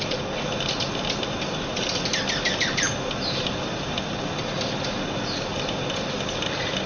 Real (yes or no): yes